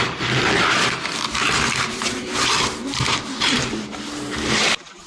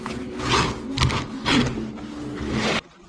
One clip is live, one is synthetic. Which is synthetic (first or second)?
first